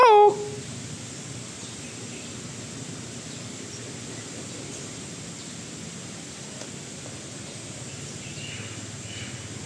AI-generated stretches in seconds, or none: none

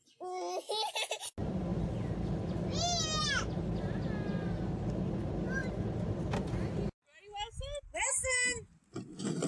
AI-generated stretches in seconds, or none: none